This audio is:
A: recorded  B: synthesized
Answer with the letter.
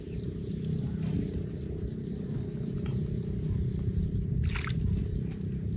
A